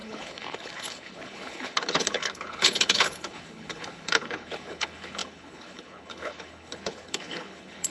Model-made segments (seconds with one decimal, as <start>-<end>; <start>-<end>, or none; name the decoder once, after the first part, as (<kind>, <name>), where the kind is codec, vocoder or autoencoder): 0.0-7.9 (codec, HILCodec)